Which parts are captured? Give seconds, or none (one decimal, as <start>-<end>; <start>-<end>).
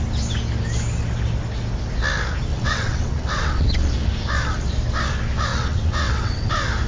0.0-2.5; 3.8-5.5; 6.5-6.9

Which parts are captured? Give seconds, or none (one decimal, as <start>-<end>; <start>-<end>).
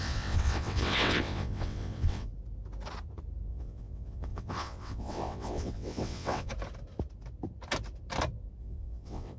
2.3-3.5; 6.5-8.6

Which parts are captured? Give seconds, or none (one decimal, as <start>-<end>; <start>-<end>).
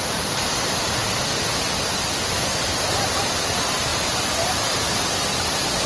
0.0-5.9